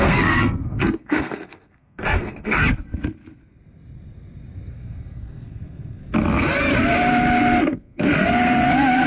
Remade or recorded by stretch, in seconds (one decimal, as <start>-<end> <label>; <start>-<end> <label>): 0.0-2.6 remade; 2.6-4.7 recorded; 4.7-6.0 remade; 6.0-7.6 recorded; 7.6-9.1 remade